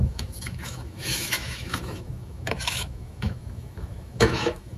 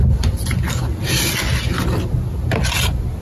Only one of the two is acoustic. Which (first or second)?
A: second